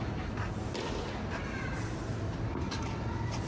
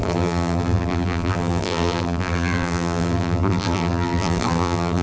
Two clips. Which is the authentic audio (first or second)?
first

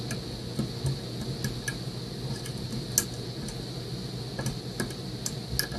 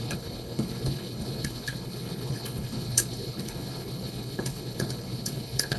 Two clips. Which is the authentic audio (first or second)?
first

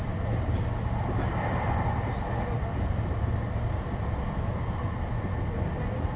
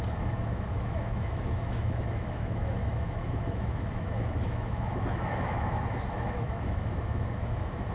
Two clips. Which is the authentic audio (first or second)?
first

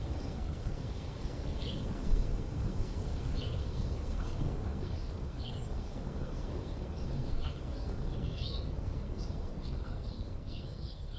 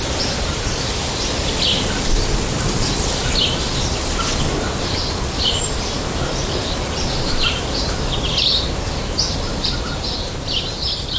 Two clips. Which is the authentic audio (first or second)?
second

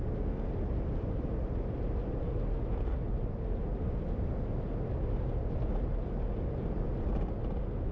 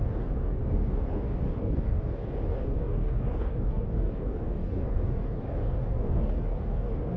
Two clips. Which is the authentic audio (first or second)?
first